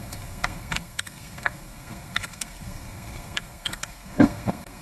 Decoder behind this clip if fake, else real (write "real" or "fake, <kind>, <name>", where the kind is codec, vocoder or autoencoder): fake, codec, SNAC